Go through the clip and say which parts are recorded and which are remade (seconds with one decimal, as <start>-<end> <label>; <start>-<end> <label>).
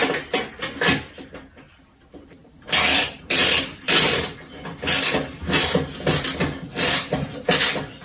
0.0-2.4 recorded; 2.4-4.2 remade; 4.2-8.0 recorded